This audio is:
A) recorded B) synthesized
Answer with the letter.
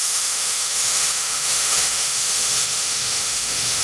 B